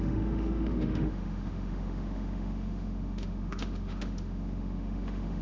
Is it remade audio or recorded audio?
remade